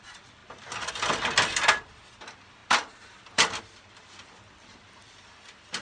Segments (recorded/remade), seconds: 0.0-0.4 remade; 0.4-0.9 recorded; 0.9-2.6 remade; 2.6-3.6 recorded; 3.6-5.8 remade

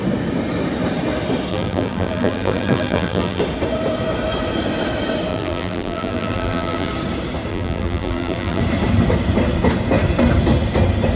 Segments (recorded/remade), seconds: 0.0-1.5 recorded; 1.5-3.4 remade; 3.4-5.3 recorded; 5.3-6.9 remade; 6.9-7.5 recorded; 7.5-8.6 remade; 8.6-11.2 recorded

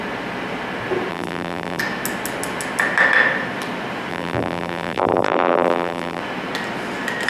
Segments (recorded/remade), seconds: 0.0-1.1 recorded; 1.1-1.8 remade; 1.8-4.1 recorded; 4.1-6.2 remade; 6.2-7.3 recorded

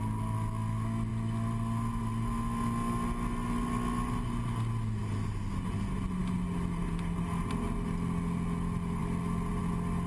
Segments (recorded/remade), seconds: 0.0-10.1 recorded

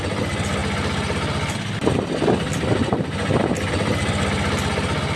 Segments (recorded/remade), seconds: 0.0-5.2 recorded

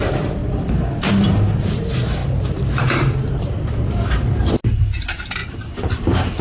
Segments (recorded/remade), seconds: 0.0-0.4 remade; 0.4-1.1 recorded; 1.1-6.4 remade